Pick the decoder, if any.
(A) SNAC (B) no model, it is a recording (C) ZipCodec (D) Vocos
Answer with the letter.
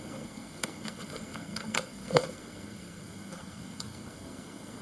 A